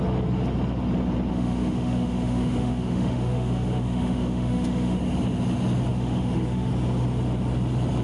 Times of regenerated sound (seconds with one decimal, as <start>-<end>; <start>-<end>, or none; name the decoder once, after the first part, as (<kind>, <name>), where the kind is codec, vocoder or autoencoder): 1.3-5.0 (autoencoder, DAC-VAE); 5.9-6.7